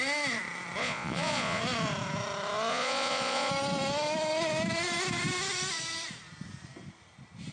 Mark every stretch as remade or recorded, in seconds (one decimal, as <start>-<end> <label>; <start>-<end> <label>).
0.0-0.8 recorded; 0.8-1.6 remade; 1.6-2.7 recorded; 2.7-3.5 remade; 3.5-7.5 recorded